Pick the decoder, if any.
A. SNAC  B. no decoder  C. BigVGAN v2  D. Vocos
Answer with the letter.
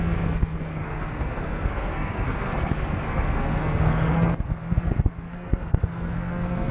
A